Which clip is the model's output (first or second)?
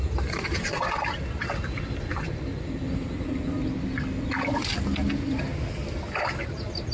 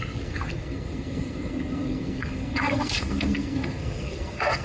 second